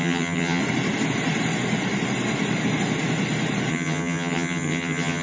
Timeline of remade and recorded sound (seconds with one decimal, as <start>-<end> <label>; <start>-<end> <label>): 0.0-0.6 remade; 0.6-3.7 recorded; 3.7-5.2 remade